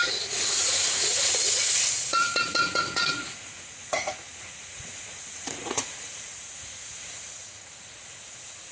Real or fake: fake